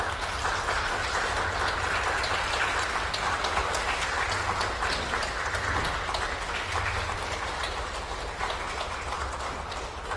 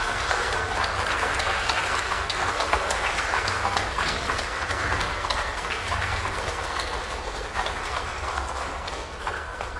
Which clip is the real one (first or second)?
first